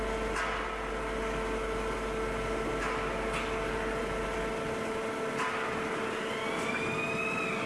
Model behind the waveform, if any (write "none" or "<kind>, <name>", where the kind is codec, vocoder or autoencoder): none